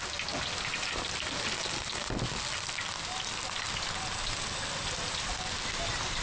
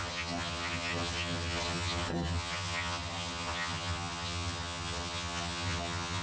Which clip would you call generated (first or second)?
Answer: second